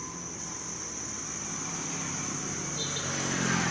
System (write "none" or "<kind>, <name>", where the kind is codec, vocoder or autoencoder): none